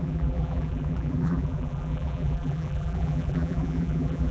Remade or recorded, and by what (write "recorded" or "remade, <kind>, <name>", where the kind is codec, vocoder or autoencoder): remade, vocoder, BigVGAN v2